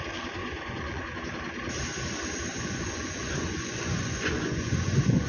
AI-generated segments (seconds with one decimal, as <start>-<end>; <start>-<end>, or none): 0.4-1.2; 2.5-5.3